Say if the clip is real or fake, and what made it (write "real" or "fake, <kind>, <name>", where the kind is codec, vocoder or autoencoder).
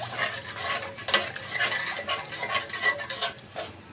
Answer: real